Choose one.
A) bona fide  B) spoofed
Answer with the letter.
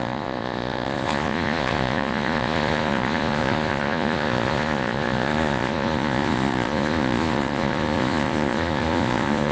B